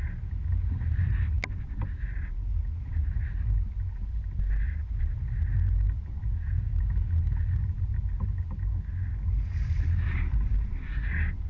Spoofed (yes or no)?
no